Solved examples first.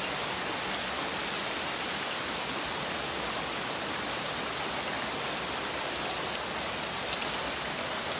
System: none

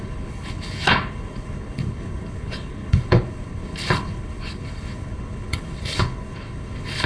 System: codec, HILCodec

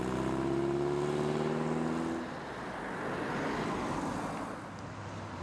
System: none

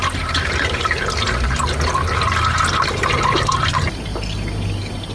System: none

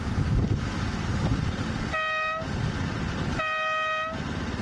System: none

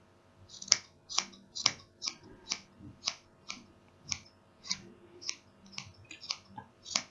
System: none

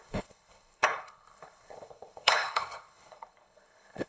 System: codec, HILCodec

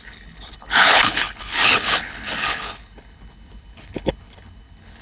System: codec, HILCodec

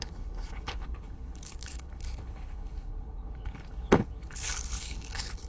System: codec, HILCodec